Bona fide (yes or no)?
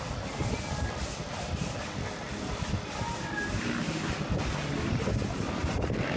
yes